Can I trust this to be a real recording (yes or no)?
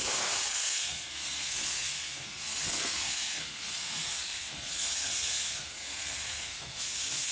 no